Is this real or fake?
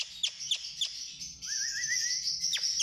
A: real